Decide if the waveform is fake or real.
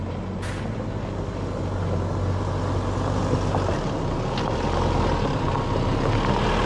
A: real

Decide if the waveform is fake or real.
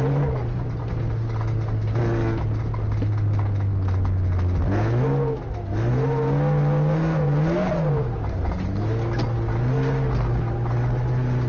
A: real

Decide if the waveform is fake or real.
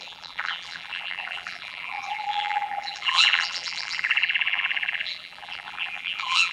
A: fake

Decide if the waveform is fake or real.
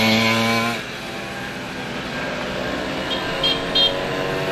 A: real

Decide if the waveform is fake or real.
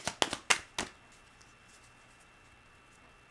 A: real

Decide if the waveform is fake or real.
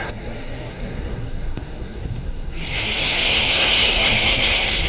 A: fake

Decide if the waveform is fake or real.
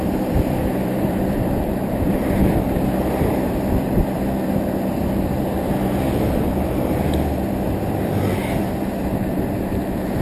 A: fake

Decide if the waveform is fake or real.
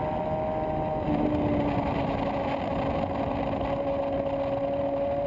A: real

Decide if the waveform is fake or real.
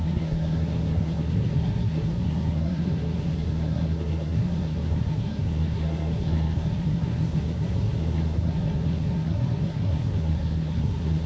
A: fake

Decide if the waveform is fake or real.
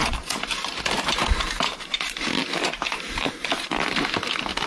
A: fake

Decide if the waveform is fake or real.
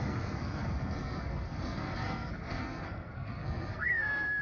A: fake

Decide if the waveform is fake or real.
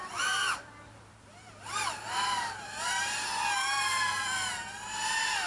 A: fake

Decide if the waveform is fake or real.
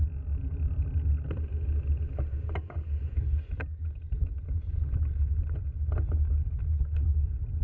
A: real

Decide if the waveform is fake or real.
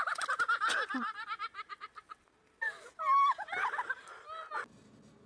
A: real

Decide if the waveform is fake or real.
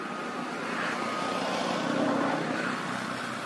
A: real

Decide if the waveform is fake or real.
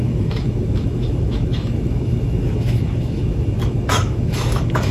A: fake